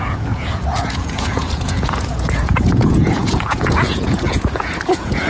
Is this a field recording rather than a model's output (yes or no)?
no